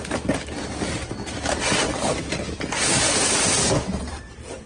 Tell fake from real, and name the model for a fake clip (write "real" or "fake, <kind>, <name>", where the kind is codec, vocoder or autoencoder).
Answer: fake, vocoder, BigVGAN v2